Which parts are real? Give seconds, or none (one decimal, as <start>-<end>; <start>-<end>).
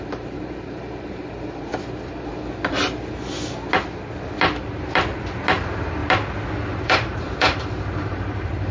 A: 1.7-5.6; 6.0-6.5